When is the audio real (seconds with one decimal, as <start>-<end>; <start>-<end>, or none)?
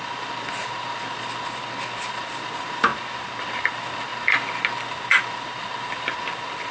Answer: 0.0-6.7